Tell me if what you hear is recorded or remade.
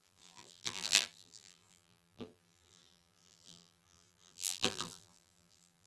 remade